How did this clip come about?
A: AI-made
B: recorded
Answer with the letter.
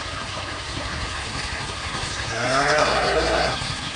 A